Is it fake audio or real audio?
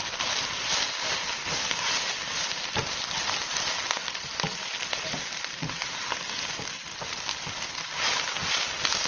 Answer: real